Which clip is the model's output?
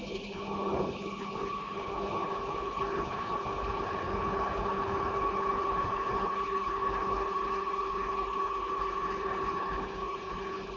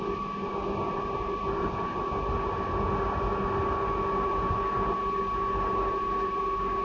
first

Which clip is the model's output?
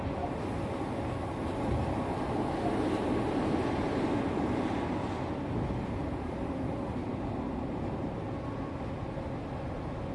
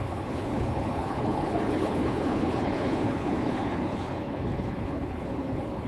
second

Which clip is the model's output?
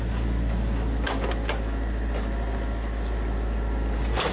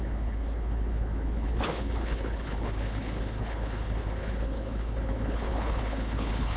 second